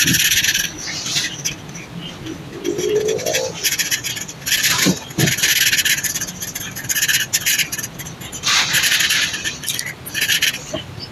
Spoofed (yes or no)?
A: no